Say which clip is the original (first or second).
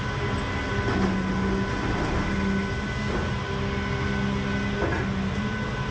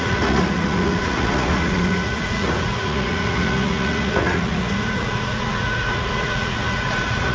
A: first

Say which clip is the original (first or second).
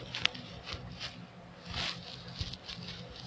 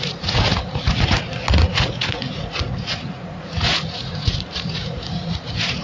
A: first